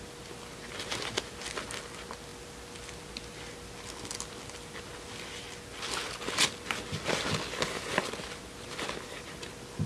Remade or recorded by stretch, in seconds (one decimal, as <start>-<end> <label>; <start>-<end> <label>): 0.0-9.9 recorded